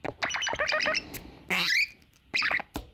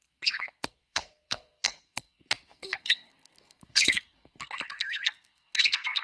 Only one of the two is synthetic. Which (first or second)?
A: second